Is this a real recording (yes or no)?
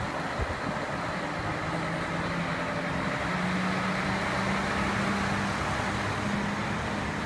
yes